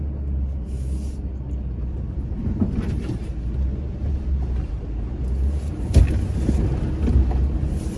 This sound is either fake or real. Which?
real